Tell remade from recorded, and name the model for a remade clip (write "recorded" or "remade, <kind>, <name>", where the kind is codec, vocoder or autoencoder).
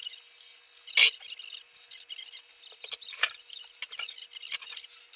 recorded